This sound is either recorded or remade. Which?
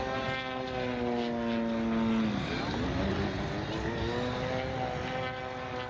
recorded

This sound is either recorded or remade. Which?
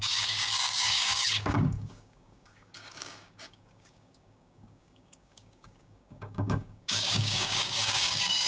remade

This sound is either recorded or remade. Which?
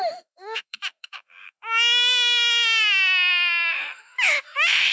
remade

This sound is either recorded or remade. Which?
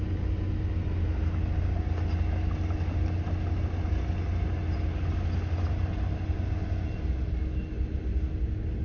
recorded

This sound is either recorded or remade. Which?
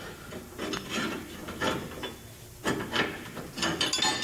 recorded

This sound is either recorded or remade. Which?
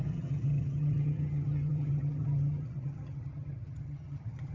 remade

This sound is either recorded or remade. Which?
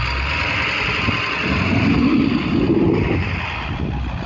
recorded